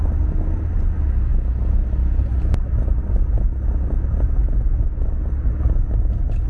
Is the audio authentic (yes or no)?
yes